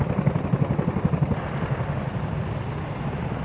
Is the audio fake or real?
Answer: real